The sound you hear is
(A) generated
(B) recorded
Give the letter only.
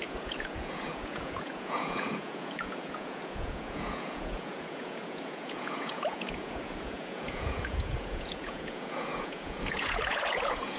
A